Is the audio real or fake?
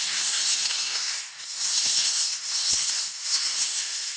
fake